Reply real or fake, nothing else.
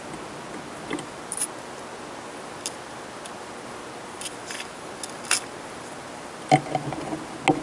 real